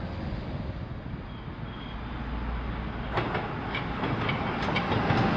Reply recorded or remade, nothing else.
recorded